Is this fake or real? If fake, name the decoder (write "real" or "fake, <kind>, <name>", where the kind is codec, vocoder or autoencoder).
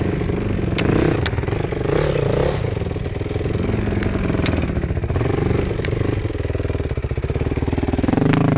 real